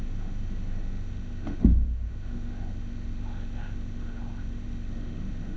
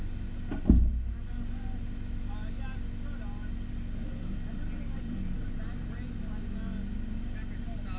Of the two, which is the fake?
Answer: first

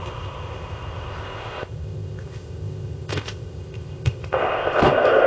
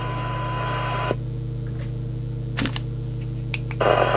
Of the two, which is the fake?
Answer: first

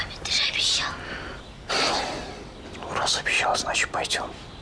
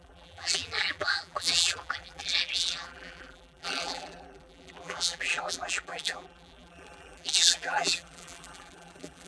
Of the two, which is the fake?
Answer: second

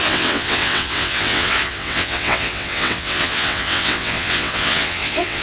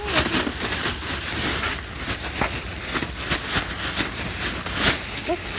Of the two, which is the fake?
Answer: first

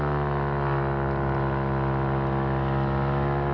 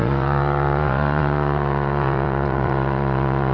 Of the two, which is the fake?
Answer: second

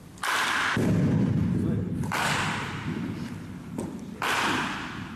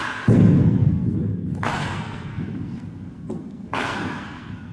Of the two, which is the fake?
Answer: second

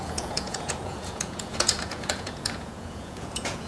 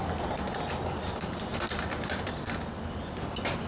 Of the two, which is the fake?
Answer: first